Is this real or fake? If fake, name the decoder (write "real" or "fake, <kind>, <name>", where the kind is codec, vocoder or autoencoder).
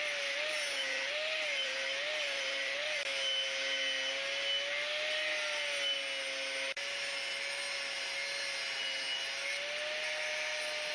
real